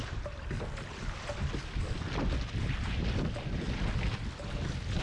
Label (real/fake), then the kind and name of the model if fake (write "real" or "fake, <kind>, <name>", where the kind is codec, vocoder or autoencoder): real